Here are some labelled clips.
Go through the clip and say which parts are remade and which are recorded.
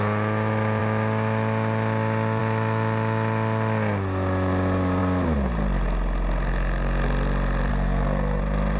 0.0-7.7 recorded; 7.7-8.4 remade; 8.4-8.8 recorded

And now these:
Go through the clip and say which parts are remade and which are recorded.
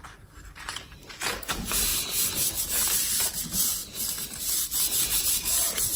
0.0-1.9 remade; 1.9-2.6 recorded; 2.6-3.8 remade; 3.8-5.2 recorded; 5.2-6.0 remade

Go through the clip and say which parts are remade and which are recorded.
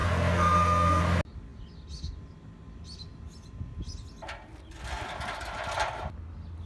0.0-1.0 remade; 1.0-6.7 recorded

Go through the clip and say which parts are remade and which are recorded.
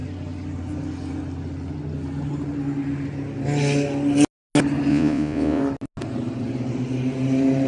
0.0-4.9 recorded; 4.9-5.6 remade; 5.6-7.7 recorded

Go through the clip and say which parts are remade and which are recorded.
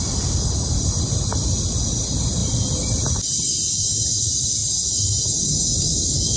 0.0-4.6 remade; 4.6-5.5 recorded; 5.5-6.4 remade